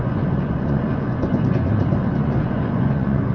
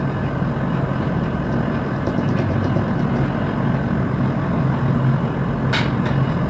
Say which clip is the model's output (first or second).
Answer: first